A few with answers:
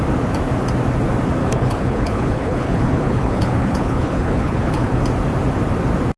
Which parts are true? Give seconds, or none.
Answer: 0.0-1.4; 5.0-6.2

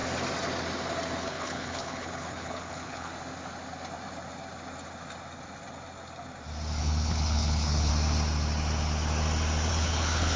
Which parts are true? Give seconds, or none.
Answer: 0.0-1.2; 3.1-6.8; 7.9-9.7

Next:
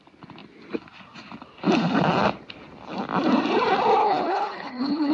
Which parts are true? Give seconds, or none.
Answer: 0.0-4.0